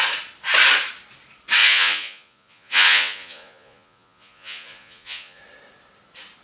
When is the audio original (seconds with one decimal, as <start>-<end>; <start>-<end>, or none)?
0.0-1.6; 5.4-6.4